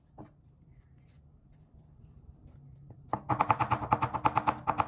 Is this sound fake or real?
real